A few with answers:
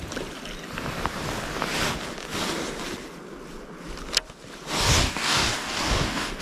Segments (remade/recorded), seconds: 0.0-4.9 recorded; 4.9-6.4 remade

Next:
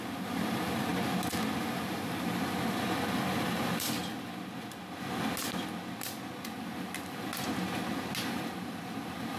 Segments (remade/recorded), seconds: 0.0-0.9 remade; 0.9-1.6 recorded; 1.6-4.0 remade; 4.0-6.6 recorded; 6.6-7.3 remade; 7.3-8.2 recorded; 8.2-9.4 remade

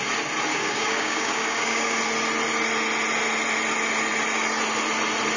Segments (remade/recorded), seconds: 0.0-0.5 recorded; 0.5-2.0 remade; 2.0-5.4 recorded

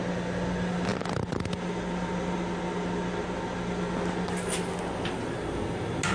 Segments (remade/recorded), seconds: 0.0-6.1 recorded

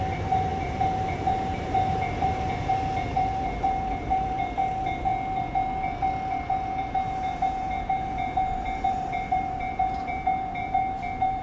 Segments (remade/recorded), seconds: 0.0-5.1 remade; 5.1-6.8 recorded; 6.8-11.4 remade

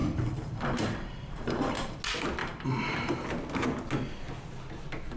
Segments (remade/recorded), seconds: 0.0-2.0 remade; 2.0-2.4 recorded; 2.4-3.2 remade; 3.2-5.2 recorded

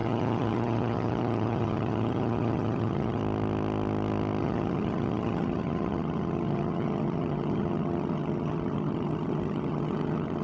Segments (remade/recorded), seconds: 0.0-3.2 remade; 3.2-4.4 recorded; 4.4-10.4 remade

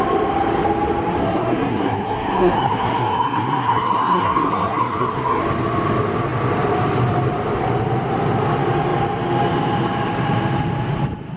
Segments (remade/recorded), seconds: 0.0-1.2 recorded; 1.2-5.4 remade; 5.4-11.4 recorded